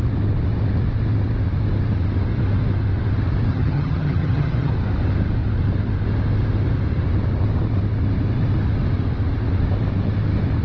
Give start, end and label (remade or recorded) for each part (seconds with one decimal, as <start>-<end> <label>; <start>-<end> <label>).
0.0-3.5 recorded; 3.5-4.7 remade; 4.7-10.6 recorded